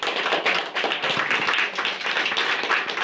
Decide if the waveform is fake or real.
real